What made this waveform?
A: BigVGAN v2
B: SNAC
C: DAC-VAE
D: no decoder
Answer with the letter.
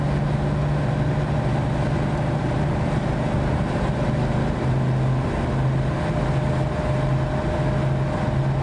D